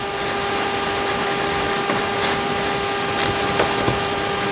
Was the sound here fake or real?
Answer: real